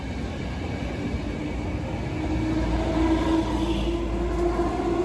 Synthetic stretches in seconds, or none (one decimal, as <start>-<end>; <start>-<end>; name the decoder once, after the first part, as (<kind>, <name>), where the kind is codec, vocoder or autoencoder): none